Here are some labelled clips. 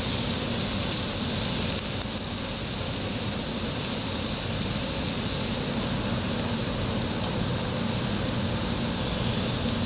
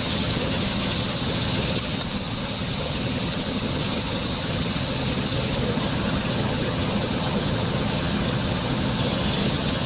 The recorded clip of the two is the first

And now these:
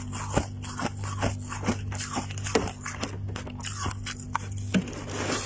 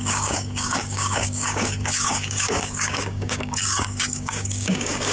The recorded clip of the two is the first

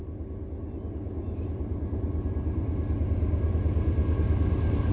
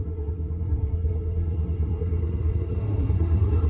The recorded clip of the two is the first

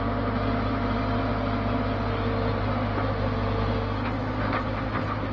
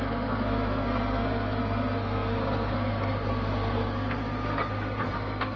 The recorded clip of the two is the first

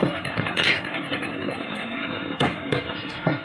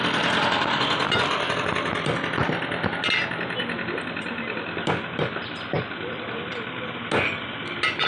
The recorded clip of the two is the second